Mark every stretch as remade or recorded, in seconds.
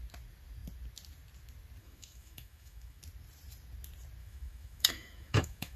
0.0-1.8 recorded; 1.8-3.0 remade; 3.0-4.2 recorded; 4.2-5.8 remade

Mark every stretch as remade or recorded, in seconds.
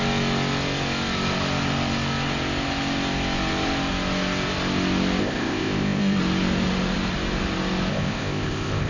0.0-5.2 recorded; 5.2-6.2 remade; 6.2-7.9 recorded; 7.9-8.9 remade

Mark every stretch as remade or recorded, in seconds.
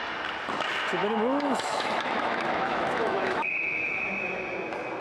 0.0-1.0 recorded; 1.0-4.0 remade; 4.0-5.0 recorded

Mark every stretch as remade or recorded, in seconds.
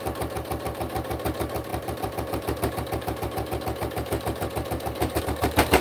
0.0-5.8 remade